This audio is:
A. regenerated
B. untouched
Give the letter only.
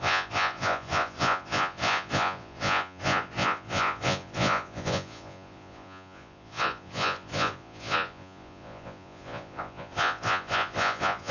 A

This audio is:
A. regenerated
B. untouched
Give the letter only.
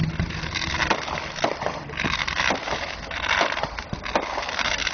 A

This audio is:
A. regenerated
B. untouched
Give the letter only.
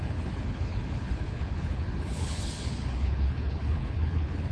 A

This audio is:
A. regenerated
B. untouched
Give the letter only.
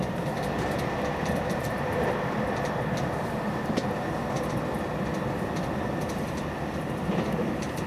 B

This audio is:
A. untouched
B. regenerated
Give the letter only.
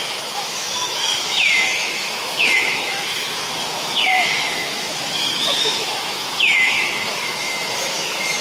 B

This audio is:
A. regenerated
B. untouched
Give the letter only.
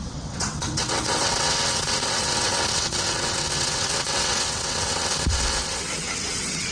A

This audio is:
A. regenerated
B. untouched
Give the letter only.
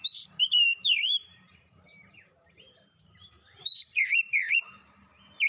A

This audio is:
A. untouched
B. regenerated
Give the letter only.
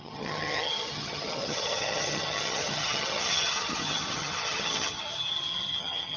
B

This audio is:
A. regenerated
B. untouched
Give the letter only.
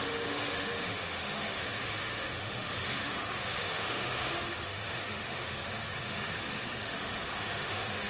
A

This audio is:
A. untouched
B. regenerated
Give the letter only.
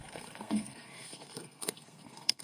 B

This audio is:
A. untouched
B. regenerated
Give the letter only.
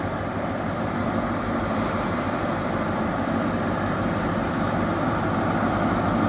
B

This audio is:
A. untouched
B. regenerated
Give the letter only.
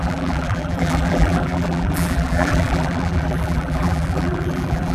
B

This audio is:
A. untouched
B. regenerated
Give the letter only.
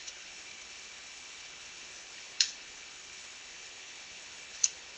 B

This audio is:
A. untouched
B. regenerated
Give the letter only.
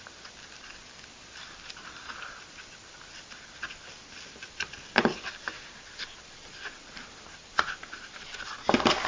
B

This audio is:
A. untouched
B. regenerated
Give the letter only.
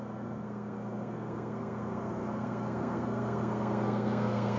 B